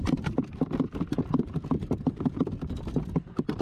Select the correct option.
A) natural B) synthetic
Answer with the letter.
B